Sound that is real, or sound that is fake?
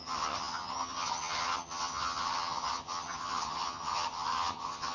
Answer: fake